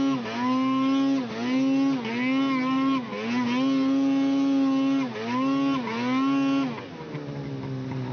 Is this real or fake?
real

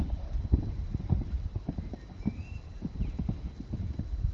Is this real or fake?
real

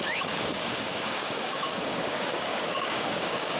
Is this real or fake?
fake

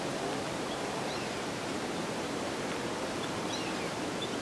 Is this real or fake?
fake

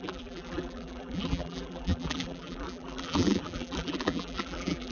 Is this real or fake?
fake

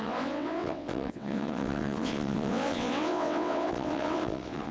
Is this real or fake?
fake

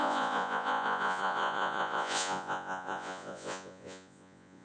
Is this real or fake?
fake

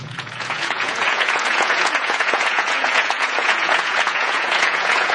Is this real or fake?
fake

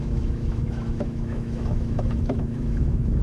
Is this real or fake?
fake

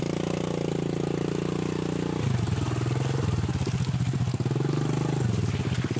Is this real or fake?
real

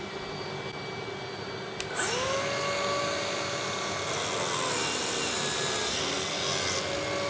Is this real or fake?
real